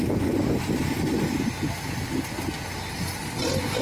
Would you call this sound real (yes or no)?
yes